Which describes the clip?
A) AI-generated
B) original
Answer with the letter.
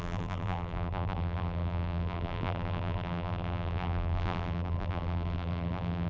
A